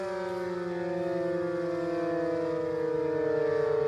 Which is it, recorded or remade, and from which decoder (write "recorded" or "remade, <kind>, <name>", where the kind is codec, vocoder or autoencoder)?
recorded